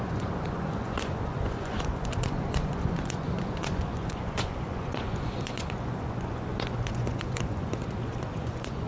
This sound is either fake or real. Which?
fake